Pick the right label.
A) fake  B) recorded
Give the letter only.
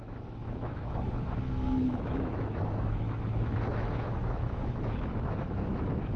A